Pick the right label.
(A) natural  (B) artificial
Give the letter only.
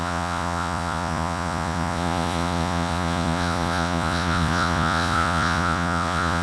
B